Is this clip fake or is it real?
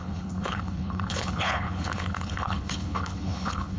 fake